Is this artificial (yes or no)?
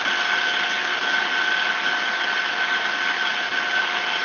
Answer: no